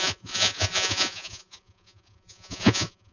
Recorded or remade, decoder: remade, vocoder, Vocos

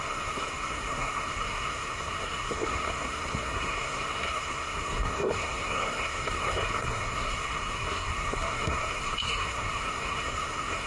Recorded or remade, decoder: remade, codec, SNAC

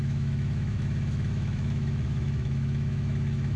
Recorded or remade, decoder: remade, autoencoder, DAC-VAE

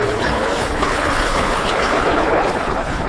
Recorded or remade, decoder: remade, codec, HILCodec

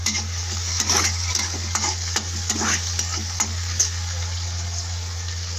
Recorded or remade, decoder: remade, codec, DAC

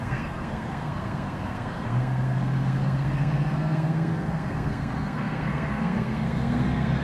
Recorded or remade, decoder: remade, codec, SNAC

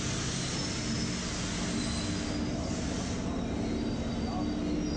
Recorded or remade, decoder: recorded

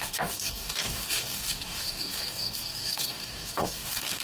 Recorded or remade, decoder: remade, codec, DAC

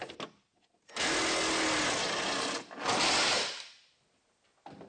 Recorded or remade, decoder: recorded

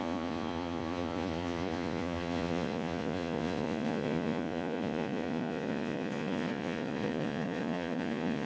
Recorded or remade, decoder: remade, vocoder, Vocos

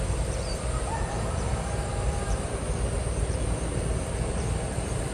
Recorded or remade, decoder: remade, vocoder, BigVGAN v2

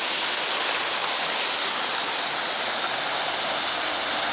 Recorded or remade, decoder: recorded